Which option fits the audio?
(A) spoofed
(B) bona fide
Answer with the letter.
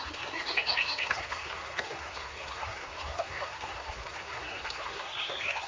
A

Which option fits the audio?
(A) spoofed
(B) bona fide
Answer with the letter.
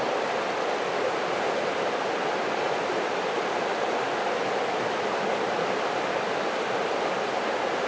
B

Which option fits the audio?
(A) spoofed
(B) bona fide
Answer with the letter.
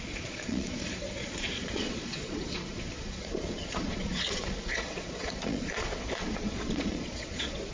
A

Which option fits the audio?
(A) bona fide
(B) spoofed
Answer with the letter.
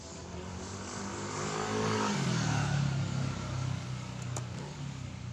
B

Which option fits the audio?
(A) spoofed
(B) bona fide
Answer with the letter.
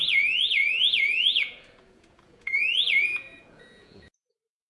A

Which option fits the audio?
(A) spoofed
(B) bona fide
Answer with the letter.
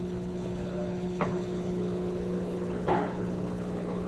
A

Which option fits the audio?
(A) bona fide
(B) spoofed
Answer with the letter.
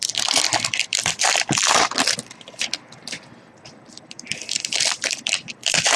B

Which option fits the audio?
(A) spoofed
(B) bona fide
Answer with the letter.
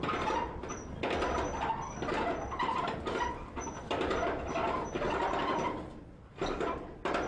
B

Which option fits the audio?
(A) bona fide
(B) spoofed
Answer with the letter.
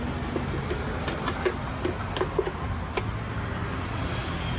A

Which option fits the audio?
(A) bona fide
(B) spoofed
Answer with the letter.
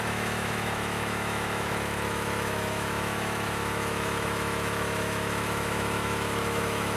B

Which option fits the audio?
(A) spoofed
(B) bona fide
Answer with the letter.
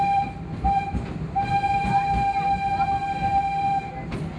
B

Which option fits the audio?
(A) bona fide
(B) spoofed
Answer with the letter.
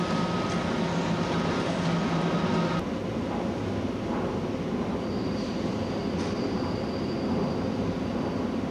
A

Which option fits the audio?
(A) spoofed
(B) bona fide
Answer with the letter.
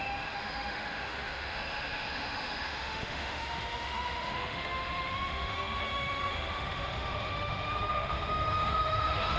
A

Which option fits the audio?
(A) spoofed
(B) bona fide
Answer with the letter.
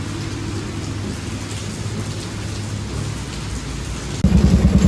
B